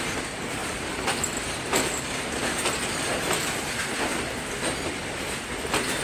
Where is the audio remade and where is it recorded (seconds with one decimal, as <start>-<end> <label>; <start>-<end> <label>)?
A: 0.0-6.0 recorded